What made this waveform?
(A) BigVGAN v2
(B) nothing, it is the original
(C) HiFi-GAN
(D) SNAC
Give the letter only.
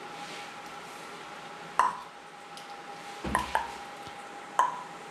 A